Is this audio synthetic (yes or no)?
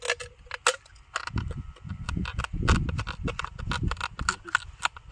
no